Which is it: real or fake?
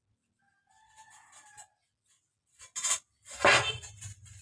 real